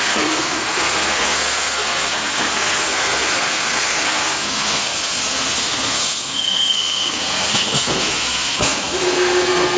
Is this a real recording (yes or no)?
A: no